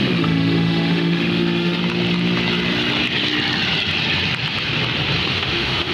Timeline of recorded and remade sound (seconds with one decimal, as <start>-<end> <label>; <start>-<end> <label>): 0.0-1.8 remade; 1.8-5.3 recorded; 5.3-5.9 remade

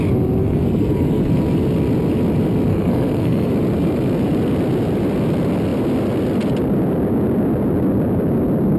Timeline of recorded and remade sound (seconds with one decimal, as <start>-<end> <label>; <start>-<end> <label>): 0.0-0.4 recorded; 0.4-1.3 remade; 1.3-2.7 recorded; 2.7-3.5 remade; 3.5-8.8 recorded